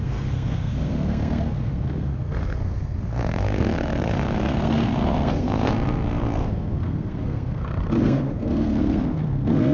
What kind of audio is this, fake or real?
fake